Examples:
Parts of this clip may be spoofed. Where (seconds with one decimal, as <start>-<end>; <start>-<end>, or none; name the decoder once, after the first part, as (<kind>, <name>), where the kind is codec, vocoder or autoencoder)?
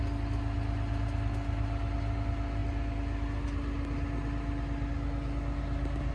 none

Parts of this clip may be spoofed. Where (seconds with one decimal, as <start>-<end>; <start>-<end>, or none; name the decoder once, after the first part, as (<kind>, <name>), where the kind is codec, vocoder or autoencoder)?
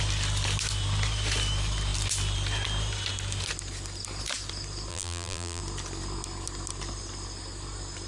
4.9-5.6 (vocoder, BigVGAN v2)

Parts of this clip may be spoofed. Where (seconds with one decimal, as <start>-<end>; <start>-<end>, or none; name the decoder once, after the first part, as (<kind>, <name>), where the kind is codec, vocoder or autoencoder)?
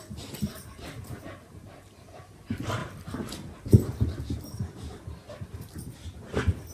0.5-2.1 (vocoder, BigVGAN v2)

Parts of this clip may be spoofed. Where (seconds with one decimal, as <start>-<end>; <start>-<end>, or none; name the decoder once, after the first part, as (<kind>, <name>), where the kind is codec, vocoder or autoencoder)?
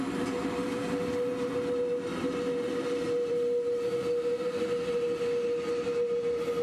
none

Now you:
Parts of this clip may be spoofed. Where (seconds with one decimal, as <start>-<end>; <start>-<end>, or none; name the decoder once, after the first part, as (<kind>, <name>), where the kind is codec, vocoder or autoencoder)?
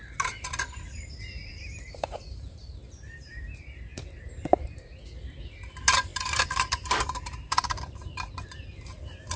1.6-2.7 (vocoder, BigVGAN v2); 3.9-5.0; 6.1-9.0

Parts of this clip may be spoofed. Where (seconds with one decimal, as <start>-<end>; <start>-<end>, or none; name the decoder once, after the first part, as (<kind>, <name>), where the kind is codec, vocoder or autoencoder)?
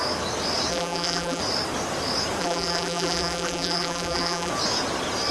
0.7-1.4 (vocoder, BigVGAN v2); 2.4-4.5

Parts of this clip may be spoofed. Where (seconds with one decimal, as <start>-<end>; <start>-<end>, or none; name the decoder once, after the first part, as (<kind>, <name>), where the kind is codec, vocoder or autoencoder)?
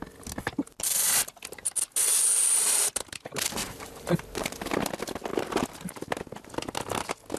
3.6-4.1 (vocoder, BigVGAN v2)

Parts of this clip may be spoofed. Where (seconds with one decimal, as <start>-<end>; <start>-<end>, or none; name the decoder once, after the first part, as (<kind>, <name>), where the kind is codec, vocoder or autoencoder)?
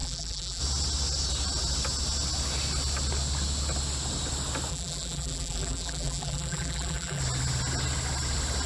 0.0-0.6 (vocoder, BigVGAN v2); 4.7-7.2